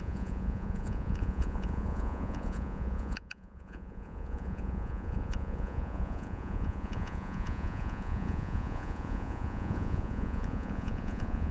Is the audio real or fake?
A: fake